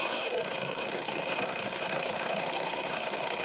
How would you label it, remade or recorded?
remade